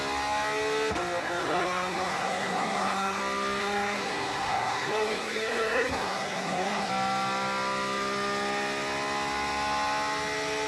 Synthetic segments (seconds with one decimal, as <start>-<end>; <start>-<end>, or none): 1.2-3.2; 3.6-6.9